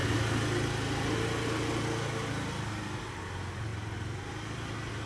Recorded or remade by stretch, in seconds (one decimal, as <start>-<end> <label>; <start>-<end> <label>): 0.0-5.1 recorded